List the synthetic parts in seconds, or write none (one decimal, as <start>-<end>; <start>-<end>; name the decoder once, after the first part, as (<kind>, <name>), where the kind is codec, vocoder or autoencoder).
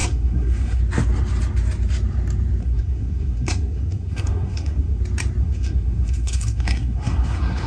0.0-0.8 (codec, SNAC); 2.6-5.0; 5.4-7.7